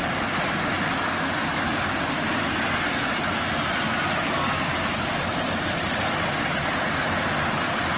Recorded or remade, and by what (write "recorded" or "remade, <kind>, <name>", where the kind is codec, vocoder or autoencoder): recorded